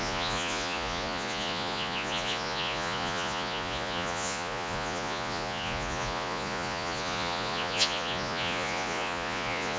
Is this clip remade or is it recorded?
remade